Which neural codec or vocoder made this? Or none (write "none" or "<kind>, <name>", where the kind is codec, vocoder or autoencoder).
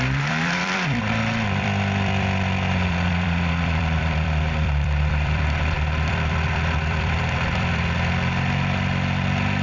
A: vocoder, BigVGAN v2